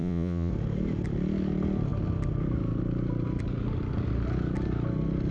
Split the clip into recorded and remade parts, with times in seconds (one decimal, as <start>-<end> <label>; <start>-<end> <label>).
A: 0.0-0.5 remade; 0.5-5.3 recorded